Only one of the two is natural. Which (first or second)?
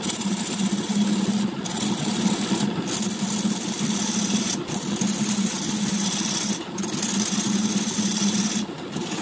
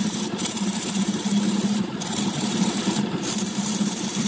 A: first